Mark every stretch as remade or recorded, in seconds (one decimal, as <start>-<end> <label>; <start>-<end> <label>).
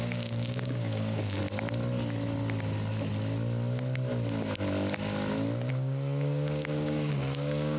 0.0-1.4 remade; 1.4-5.7 recorded; 5.7-7.8 remade